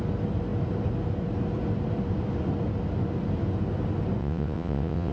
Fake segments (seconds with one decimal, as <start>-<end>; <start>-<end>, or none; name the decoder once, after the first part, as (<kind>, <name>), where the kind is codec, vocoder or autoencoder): 4.2-5.1 (vocoder, WaveNeXt)